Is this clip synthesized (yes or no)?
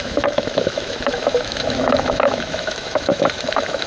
yes